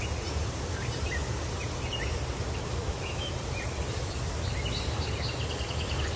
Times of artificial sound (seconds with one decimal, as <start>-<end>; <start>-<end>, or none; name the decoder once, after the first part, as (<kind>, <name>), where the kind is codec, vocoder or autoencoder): 2.8-3.3 (autoencoder, DAC-VAE)